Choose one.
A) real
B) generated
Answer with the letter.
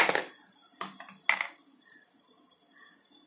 A